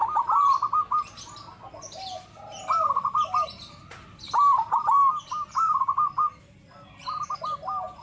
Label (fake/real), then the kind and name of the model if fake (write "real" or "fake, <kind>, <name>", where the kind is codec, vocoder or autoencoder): real